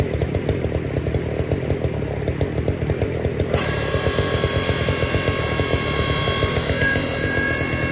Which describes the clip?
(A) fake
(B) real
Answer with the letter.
B